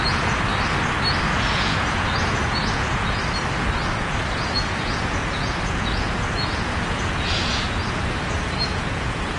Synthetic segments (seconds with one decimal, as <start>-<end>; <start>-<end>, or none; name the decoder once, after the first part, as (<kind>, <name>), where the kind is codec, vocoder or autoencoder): 0.0-0.5 (vocoder, Vocos); 1.1-3.2; 3.9-9.4